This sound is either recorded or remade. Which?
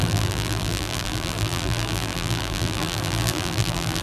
remade